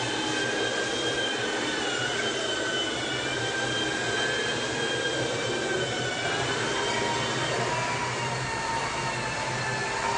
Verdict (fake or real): real